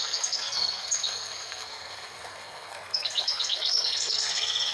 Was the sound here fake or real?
fake